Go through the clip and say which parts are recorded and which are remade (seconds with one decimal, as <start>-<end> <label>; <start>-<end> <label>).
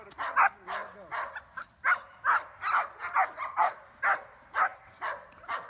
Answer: 0.0-0.8 remade; 0.8-3.5 recorded; 3.5-4.7 remade; 4.7-5.7 recorded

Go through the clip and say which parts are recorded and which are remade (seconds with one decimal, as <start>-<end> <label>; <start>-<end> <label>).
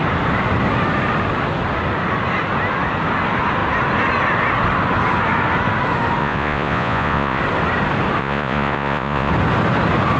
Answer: 0.0-6.2 recorded; 6.2-7.4 remade; 7.4-8.2 recorded; 8.2-9.3 remade; 9.3-10.2 recorded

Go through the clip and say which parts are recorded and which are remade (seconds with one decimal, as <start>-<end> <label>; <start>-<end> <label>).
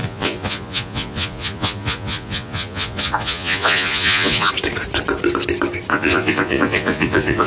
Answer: 0.0-4.5 remade; 4.5-5.9 recorded; 5.9-7.5 remade